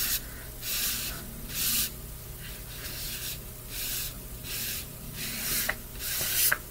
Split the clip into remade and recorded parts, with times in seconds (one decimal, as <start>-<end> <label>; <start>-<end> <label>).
0.0-6.7 recorded